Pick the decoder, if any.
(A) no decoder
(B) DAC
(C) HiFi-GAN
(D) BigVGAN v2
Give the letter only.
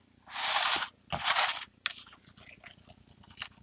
A